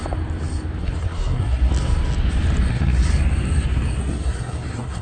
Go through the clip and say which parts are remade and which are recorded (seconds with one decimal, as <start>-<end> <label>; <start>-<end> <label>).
0.0-0.8 recorded; 0.8-1.7 remade; 1.7-2.7 recorded; 2.7-3.1 remade; 3.1-4.0 recorded; 4.0-5.0 remade